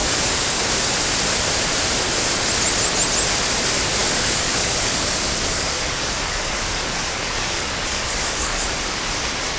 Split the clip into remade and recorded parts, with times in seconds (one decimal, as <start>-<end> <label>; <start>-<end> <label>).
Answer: 0.0-0.7 remade; 0.7-4.0 recorded; 4.0-9.0 remade; 9.0-9.6 recorded